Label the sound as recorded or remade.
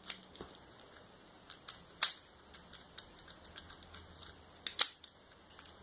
recorded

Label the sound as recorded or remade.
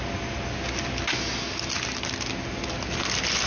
recorded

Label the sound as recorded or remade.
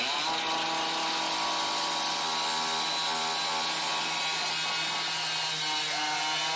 recorded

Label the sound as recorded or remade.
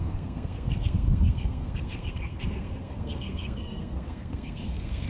remade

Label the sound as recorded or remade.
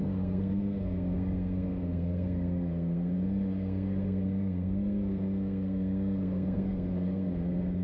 remade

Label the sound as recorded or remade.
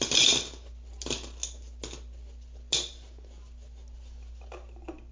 recorded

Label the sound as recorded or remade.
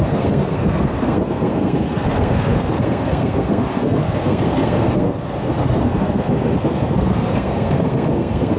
remade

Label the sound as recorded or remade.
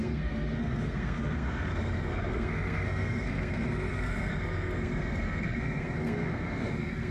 remade